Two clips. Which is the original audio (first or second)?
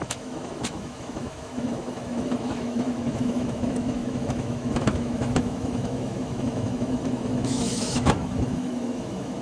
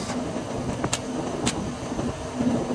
second